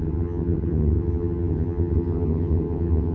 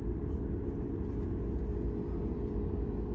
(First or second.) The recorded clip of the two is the second